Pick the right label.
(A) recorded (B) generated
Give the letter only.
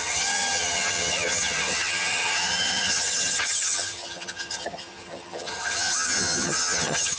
B